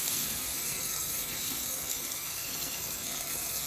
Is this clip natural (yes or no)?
no